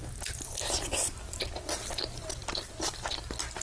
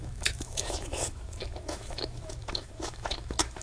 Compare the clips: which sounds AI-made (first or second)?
second